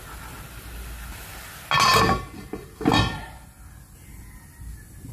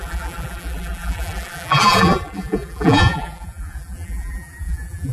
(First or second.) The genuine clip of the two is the first